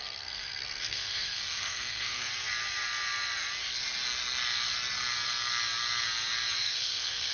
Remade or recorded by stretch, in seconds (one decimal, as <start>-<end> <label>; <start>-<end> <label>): 0.0-2.3 remade; 2.3-6.6 recorded; 6.6-7.3 remade